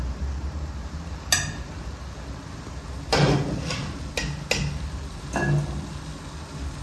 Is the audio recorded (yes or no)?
yes